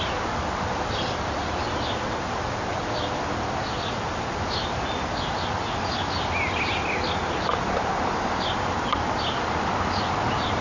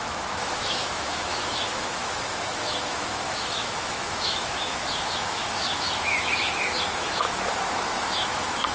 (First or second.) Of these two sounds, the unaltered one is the first